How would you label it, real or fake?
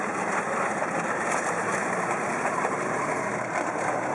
fake